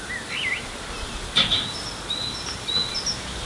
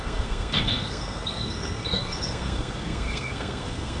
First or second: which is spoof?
second